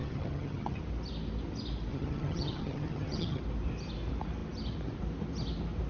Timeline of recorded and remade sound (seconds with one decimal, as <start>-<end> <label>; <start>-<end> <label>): 0.0-0.8 remade; 0.8-1.9 recorded; 1.9-3.4 remade; 3.4-5.9 recorded